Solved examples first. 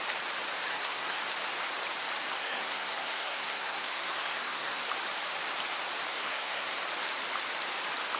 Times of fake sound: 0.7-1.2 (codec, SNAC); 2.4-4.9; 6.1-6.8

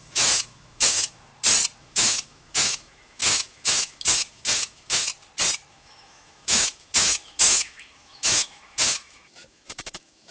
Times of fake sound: 0.0-1.3 (autoencoder, DAC-VAE); 1.8-5.1; 5.7-10.3

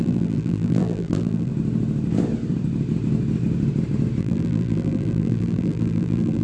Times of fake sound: 0.0-1.5 (vocoder, BigVGAN v2); 4.2-6.4

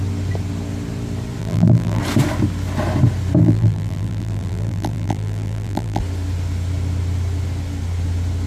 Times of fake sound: 1.4-2.0 (vocoder, BigVGAN v2); 3.4-6.0

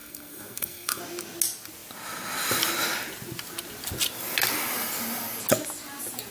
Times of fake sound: 0.0-1.0 (codec, SNAC)

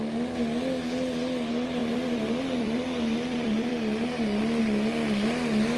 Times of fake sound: 1.8-3.7 (vocoder, BigVGAN v2)

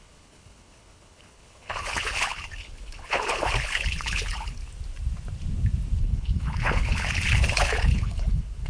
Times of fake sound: 0.0-4.6 (codec, HILCodec); 6.0-8.7

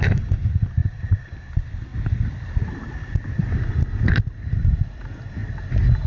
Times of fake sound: none